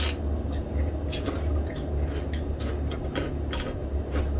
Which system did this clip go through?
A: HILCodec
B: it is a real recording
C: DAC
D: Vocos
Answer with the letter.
B